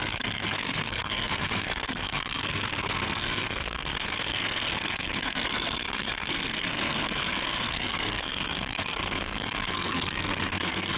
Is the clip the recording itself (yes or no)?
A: no